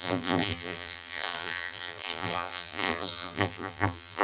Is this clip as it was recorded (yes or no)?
no